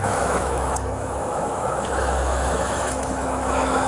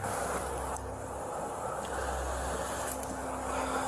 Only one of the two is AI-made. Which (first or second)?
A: first